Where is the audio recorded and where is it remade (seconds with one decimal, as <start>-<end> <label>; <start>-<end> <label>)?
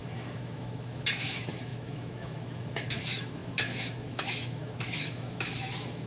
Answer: 0.0-6.1 remade